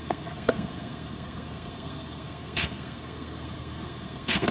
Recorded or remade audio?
remade